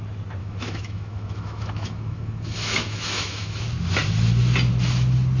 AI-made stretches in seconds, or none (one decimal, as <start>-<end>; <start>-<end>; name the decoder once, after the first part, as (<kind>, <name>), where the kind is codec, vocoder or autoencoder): 0.4-3.6 (autoencoder, DAC-VAE)

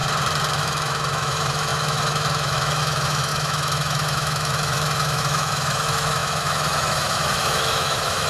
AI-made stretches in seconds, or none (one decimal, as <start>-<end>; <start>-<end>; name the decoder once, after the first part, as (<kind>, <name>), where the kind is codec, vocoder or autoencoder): 0.6-8.3 (autoencoder, DAC-VAE)

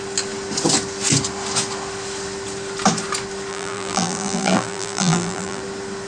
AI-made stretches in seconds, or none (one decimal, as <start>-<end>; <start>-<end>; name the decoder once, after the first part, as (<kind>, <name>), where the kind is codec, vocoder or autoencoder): 3.5-5.6 (vocoder, BigVGAN v2)

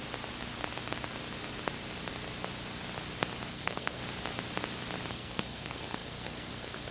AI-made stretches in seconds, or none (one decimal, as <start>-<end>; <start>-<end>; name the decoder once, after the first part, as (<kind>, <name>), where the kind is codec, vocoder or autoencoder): 3.5-4.0 (codec, SNAC); 5.1-6.9

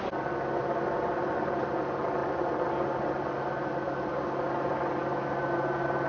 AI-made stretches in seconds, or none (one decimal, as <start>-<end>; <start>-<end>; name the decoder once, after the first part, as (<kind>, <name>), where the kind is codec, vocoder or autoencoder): none

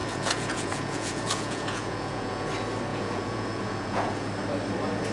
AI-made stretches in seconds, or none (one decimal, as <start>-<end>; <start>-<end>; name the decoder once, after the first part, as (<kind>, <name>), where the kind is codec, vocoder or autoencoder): 0.0-2.5 (vocoder, Vocos); 2.9-4.3

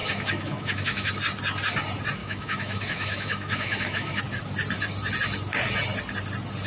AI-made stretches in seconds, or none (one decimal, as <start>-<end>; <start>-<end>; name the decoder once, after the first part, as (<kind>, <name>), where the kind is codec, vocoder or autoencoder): 0.0-1.1 (autoencoder, DAC-VAE); 2.2-4.2